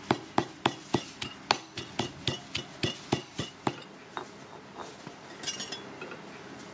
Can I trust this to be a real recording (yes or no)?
yes